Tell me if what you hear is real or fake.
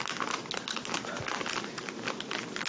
real